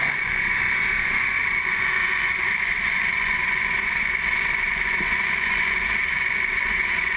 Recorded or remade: remade